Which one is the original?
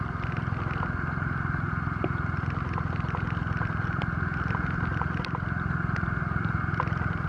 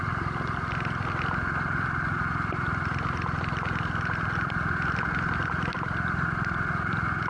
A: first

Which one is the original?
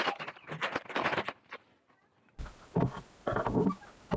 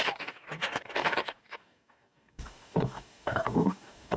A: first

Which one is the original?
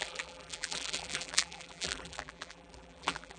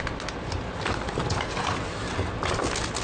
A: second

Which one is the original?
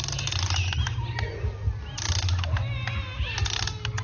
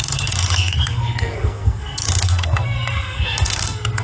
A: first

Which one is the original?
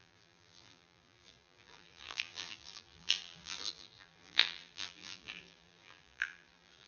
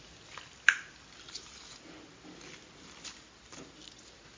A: second